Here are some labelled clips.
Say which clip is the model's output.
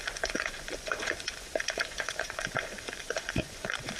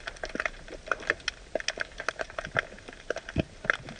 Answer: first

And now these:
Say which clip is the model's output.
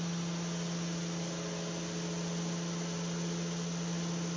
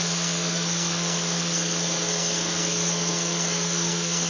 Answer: second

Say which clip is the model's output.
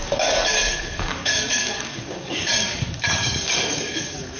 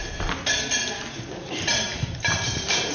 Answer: first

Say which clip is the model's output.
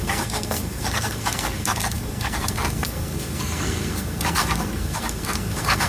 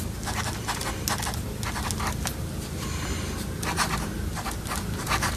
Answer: first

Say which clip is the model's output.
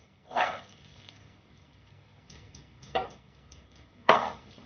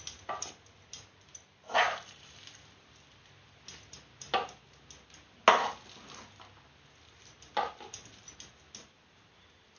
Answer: first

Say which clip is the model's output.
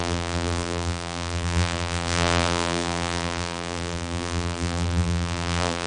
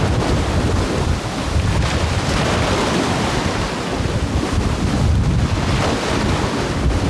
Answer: first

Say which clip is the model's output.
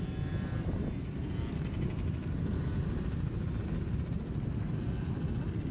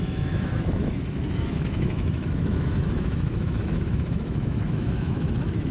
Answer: second